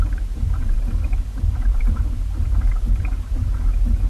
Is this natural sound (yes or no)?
no